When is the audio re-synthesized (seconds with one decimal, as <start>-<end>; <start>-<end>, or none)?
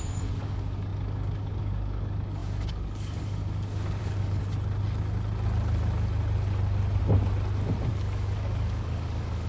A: 0.0-4.4; 7.9-9.5